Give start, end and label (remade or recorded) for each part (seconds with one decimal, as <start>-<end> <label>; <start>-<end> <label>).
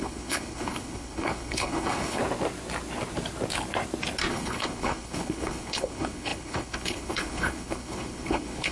0.0-2.2 remade; 2.2-4.3 recorded; 4.3-8.7 remade